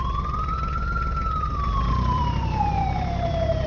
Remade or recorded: remade